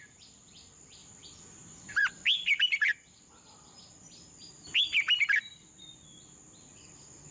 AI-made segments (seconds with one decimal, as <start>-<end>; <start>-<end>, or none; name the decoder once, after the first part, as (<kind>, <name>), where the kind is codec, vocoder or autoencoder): 1.0-2.1 (vocoder, BigVGAN v2)